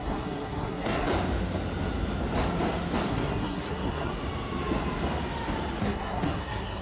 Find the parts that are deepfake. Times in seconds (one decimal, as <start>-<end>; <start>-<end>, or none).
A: 0.0-1.1; 3.1-4.1; 5.8-6.8